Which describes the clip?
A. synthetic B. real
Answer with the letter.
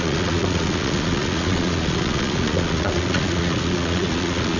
A